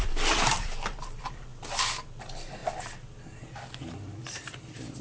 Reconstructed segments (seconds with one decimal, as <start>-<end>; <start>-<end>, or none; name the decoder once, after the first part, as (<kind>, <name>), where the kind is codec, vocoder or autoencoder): 0.0-1.5 (vocoder, BigVGAN v2); 2.2-2.6; 4.2-5.0